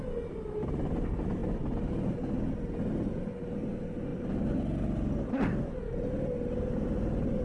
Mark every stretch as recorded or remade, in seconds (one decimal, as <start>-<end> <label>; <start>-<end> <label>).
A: 0.0-4.1 recorded; 4.1-5.2 remade; 5.2-7.4 recorded